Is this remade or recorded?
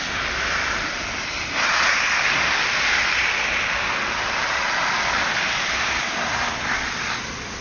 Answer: recorded